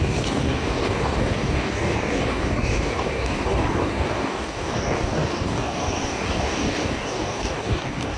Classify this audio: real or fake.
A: fake